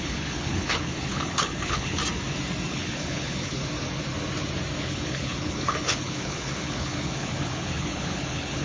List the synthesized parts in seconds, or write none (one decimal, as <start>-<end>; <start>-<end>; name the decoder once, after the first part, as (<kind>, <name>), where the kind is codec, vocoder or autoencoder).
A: 0.0-2.0 (codec, HILCodec); 2.7-3.6; 4.8-8.6